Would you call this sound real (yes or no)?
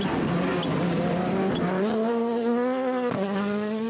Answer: yes